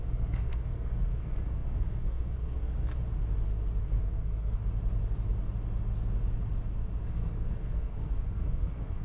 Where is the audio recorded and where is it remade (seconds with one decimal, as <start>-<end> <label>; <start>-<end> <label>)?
0.0-2.9 remade; 2.9-3.8 recorded; 3.8-4.6 remade; 4.6-7.1 recorded; 7.1-9.0 remade